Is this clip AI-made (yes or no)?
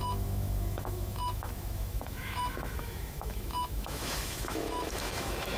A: yes